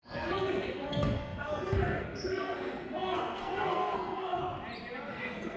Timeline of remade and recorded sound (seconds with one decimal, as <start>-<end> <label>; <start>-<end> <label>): 0.0-4.4 remade; 4.4-5.1 recorded; 5.1-5.6 remade